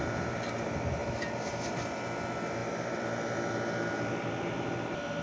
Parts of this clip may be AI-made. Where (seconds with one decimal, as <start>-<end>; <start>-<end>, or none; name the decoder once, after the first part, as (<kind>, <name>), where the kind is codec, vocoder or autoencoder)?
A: none